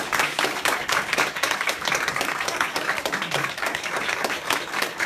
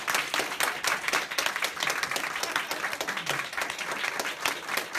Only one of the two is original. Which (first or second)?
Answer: second